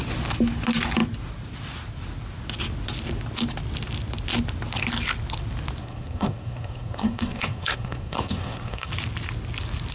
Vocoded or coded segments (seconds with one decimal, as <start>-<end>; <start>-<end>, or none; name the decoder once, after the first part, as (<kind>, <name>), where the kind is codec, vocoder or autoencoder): 5.8-8.9 (codec, SNAC)